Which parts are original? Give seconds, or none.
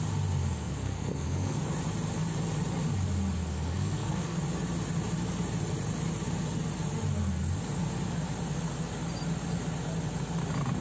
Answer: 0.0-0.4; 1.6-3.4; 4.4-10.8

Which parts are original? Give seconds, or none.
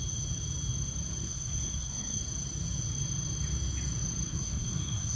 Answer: 0.0-1.2; 2.2-4.3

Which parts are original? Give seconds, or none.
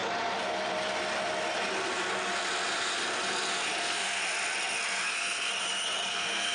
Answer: 0.0-3.8; 4.2-5.1; 5.5-6.1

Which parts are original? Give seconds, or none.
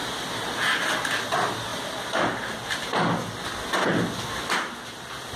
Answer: 0.0-5.4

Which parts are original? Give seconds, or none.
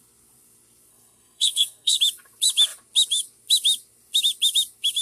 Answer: 0.0-0.9; 2.0-5.0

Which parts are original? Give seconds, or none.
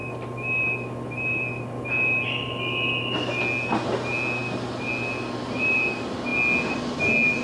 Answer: 0.0-7.4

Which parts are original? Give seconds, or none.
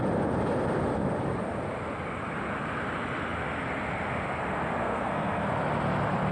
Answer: 0.0-4.8; 5.5-6.3